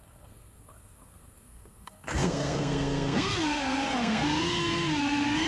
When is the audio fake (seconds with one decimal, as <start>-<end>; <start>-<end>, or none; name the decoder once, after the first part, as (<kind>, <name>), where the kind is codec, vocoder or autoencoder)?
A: 0.0-5.5 (codec, SNAC)